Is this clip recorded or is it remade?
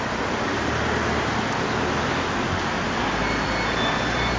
recorded